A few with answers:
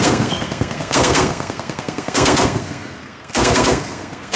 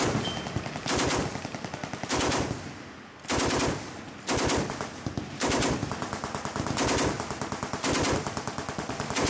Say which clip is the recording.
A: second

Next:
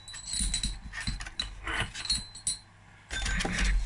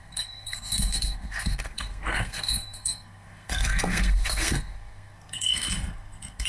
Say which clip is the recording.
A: first